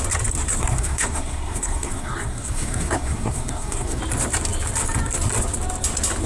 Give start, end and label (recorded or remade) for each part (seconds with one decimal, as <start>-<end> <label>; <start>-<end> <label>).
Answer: 0.0-0.6 recorded; 0.6-4.0 remade; 4.0-6.3 recorded